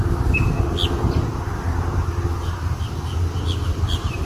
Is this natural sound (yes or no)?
yes